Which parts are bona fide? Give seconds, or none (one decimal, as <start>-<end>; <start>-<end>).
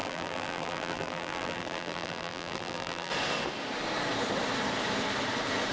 3.1-5.7